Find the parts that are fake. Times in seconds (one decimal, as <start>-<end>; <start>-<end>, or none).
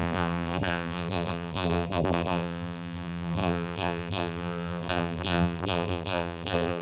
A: 0.0-6.8